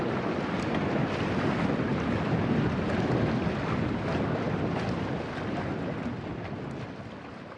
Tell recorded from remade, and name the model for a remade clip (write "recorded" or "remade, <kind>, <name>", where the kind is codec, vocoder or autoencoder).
recorded